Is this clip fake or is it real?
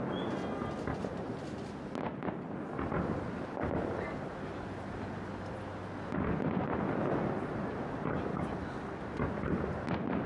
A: real